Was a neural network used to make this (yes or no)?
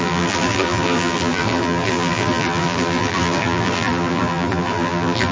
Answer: yes